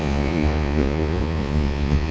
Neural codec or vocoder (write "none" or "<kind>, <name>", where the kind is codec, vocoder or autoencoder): vocoder, Vocos